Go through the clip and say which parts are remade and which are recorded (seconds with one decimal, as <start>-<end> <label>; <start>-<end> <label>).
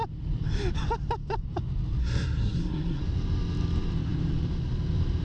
0.0-2.0 recorded; 2.0-3.0 remade; 3.0-5.2 recorded